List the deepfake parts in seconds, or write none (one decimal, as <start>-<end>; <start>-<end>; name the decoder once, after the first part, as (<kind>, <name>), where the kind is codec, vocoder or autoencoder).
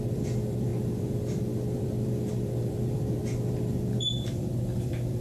0.0-3.2 (vocoder, BigVGAN v2); 4.0-5.2